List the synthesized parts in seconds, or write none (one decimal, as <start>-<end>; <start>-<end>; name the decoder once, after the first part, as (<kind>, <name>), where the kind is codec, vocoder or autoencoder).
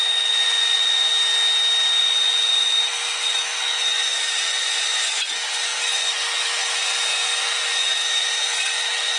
0.0-1.1 (vocoder, Vocos); 2.0-9.2